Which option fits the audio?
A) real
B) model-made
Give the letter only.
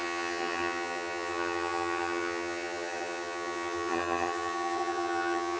B